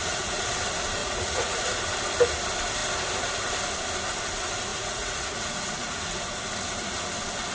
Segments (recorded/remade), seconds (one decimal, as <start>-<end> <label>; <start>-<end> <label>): 0.0-0.5 remade; 0.5-1.0 recorded; 1.0-1.6 remade; 1.6-4.7 recorded; 4.7-6.2 remade; 6.2-7.5 recorded